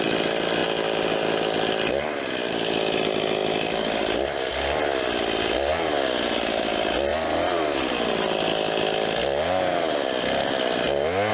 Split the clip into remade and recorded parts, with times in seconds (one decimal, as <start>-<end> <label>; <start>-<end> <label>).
0.0-11.3 recorded